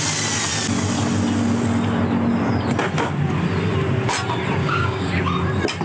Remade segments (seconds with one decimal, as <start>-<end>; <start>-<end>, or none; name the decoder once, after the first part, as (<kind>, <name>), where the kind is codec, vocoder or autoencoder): 4.6-5.2 (codec, DAC)